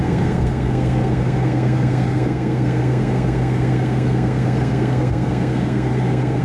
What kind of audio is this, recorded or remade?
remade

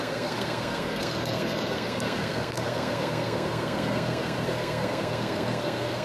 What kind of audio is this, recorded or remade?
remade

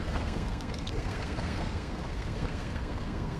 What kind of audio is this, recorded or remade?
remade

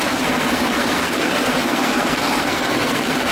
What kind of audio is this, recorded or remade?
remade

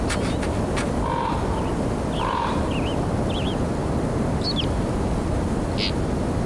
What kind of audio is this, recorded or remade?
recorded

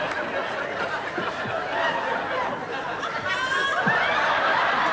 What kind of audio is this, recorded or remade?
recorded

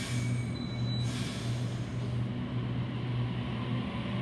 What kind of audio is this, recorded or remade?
recorded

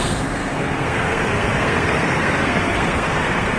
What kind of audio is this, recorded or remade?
remade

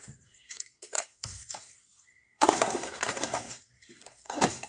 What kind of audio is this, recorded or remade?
remade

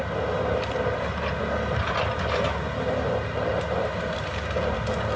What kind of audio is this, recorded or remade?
recorded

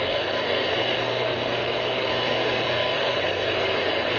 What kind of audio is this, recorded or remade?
remade